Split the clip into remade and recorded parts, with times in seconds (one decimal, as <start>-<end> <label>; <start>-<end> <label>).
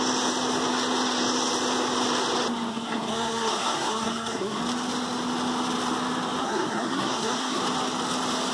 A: 0.0-2.7 recorded; 2.7-4.6 remade; 4.6-6.4 recorded; 6.4-7.6 remade; 7.6-8.5 recorded